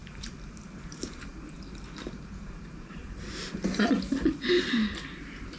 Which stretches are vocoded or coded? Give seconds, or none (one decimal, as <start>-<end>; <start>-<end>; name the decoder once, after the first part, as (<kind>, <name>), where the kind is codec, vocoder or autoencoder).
0.9-1.3 (vocoder, BigVGAN v2); 2.0-3.0